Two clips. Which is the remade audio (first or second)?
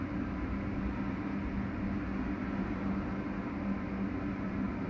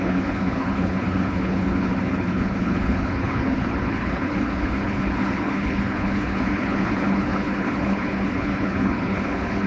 second